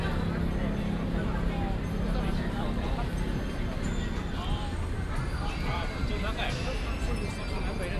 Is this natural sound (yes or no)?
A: yes